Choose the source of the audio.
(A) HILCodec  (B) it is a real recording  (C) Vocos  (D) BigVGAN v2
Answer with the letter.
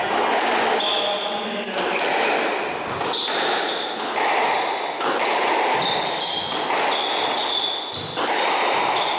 B